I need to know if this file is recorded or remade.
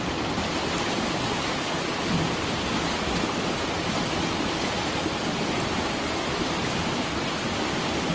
recorded